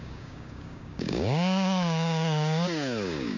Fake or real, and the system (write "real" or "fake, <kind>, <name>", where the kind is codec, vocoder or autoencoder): fake, codec, DAC